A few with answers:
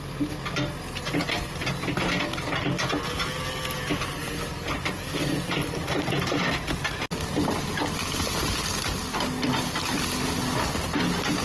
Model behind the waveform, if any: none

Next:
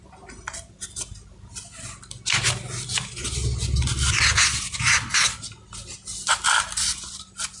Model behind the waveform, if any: none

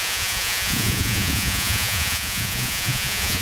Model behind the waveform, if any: vocoder, Vocos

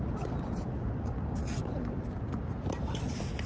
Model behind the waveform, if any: none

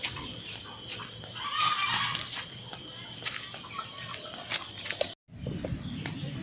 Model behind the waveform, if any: none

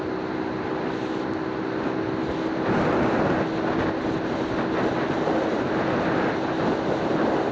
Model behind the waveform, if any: none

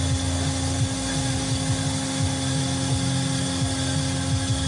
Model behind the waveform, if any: none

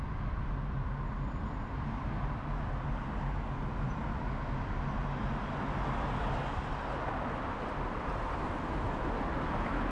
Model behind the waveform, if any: none